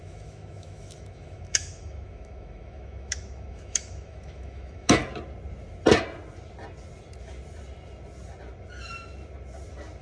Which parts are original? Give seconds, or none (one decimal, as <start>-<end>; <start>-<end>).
5.0-10.0